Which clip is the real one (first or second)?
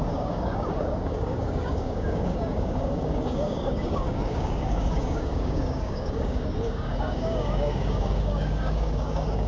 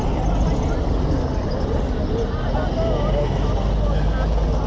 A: second